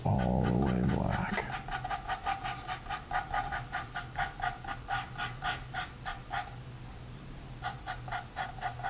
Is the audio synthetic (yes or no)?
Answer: no